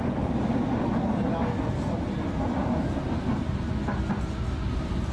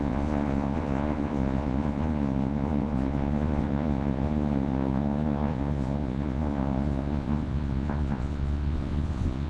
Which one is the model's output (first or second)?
second